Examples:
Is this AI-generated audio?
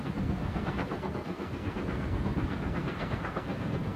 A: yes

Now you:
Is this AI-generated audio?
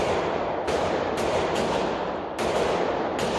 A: no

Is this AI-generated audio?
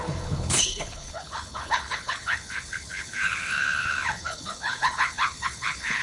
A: yes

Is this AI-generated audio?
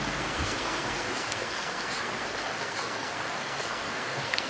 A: yes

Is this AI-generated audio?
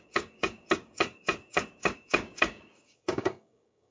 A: yes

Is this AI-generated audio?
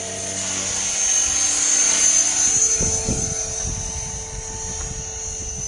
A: no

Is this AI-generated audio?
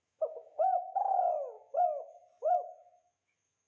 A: yes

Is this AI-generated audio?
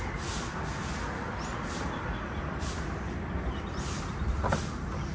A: no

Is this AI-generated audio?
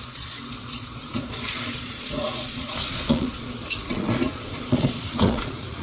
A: yes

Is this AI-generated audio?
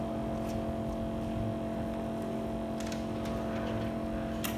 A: no